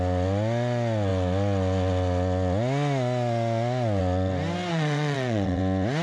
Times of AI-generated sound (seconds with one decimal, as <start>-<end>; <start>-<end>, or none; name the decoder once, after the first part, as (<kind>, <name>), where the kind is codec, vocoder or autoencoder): 4.7-5.6 (vocoder, WaveNeXt)

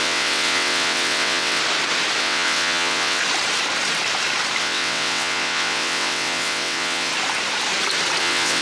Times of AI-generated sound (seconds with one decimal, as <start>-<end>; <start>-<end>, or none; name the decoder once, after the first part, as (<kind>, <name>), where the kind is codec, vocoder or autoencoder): 0.0-1.6 (vocoder, WaveNeXt); 2.2-3.2; 4.6-7.1; 8.2-8.6

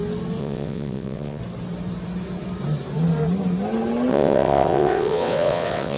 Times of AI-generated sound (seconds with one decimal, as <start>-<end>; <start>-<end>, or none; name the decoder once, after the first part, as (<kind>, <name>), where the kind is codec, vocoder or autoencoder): 0.4-1.4 (vocoder, WaveNeXt); 4.1-6.0

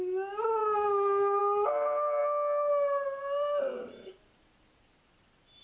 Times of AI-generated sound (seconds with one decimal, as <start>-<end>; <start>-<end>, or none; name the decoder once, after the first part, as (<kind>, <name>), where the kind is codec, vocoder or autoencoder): none

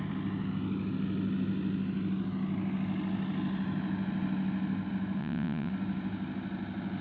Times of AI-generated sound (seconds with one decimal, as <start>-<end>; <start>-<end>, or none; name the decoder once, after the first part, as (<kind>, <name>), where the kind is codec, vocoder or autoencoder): 5.2-5.7 (vocoder, WaveNeXt)

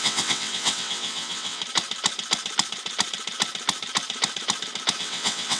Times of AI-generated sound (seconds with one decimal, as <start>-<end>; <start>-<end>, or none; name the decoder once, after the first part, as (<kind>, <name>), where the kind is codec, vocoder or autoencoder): 0.0-1.6 (vocoder, WaveNeXt); 5.0-5.6

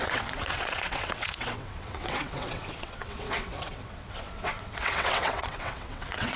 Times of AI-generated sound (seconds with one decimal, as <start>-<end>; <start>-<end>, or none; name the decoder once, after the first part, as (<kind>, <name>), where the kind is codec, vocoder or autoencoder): 0.0-6.4 (vocoder, WaveNeXt)